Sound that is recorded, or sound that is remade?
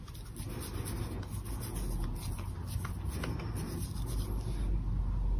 recorded